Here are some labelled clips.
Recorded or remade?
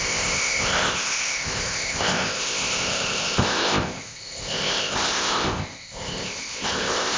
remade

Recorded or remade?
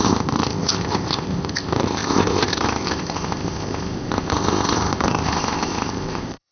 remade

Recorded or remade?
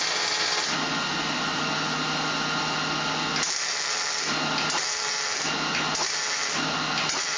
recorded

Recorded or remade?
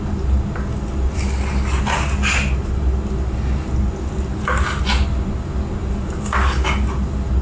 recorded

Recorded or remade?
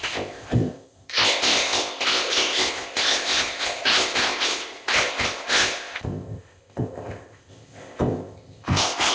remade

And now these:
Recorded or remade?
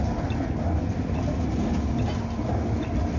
recorded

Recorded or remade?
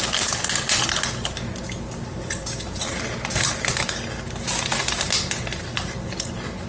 recorded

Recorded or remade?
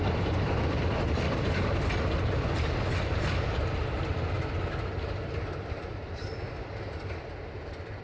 recorded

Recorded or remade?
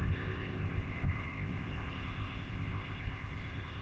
remade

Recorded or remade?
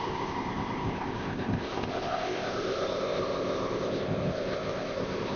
remade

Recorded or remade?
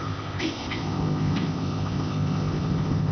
remade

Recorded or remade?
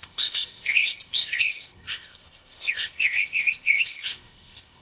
remade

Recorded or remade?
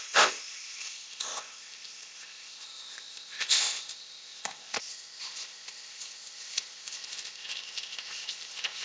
remade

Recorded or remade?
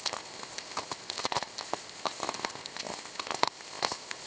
remade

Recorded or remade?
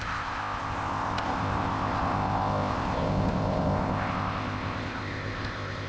remade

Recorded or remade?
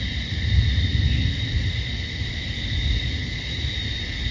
recorded